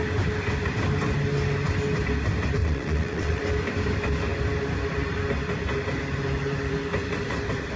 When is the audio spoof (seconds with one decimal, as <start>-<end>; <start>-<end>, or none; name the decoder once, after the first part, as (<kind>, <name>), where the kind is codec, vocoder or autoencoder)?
2.6-3.4 (vocoder, WaveNeXt)

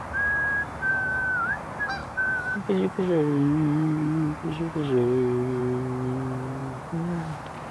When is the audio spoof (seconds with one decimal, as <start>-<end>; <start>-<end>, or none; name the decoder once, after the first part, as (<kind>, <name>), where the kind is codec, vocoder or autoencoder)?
0.9-1.6 (codec, DAC); 2.0-5.6

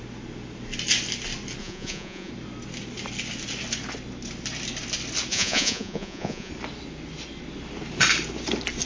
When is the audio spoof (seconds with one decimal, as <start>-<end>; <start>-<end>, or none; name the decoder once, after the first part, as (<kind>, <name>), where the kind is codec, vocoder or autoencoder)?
1.6-2.3 (vocoder, Vocos); 5.3-6.5

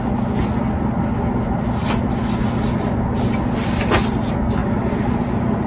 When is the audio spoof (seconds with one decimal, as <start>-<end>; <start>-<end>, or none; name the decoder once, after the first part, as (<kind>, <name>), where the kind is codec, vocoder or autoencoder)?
none

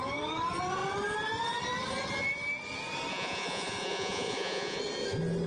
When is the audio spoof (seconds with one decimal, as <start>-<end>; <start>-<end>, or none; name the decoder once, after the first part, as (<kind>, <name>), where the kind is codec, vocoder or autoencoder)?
3.1-4.8 (vocoder, Vocos)

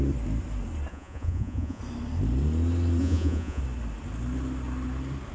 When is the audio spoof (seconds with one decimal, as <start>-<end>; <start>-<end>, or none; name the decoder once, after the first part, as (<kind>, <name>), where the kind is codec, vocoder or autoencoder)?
0.9-1.8 (vocoder, Vocos); 3.0-3.6

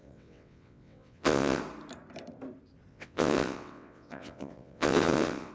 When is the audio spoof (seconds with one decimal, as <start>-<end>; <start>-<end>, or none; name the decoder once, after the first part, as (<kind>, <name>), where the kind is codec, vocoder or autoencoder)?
0.0-1.6 (vocoder, WaveNeXt); 2.9-5.5

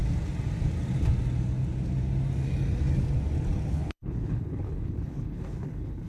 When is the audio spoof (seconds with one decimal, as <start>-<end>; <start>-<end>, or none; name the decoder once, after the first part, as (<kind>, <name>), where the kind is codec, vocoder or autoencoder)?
3.7-6.1 (codec, HILCodec)